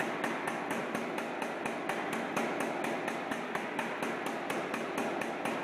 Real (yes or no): yes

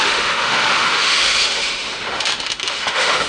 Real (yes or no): no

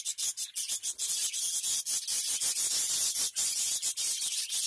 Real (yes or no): yes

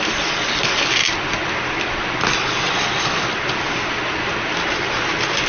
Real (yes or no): yes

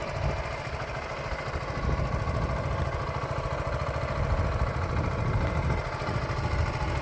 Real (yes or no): yes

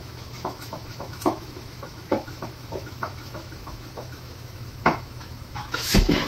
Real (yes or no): no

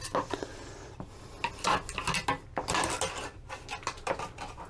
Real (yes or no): yes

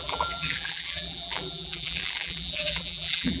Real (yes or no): no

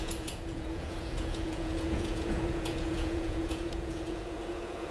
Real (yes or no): no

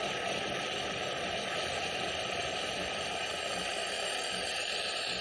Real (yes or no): yes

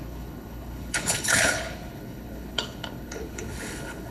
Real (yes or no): no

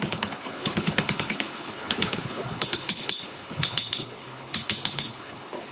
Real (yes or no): no